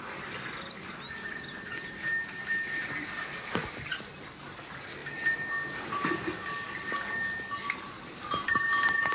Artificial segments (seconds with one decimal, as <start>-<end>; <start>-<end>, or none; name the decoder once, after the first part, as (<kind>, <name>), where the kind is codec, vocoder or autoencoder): none